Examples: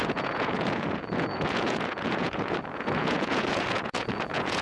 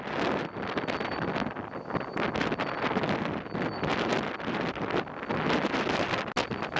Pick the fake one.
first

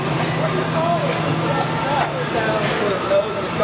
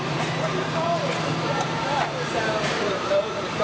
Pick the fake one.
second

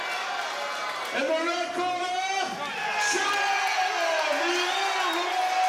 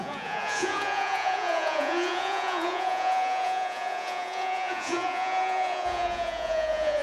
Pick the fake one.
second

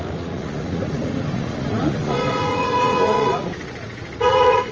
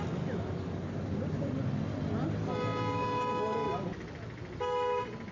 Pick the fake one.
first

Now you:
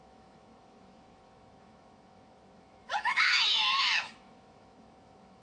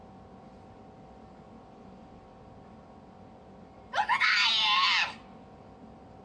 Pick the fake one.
first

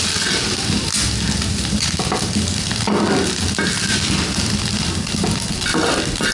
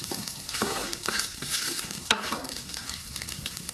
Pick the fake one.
second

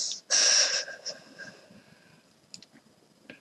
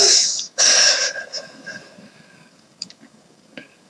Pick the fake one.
second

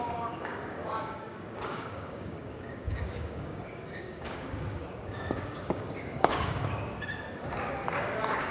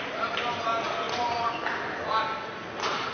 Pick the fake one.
first